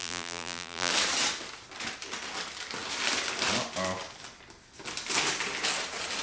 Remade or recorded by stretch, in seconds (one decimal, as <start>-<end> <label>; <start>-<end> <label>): 0.0-0.9 remade; 0.9-6.2 recorded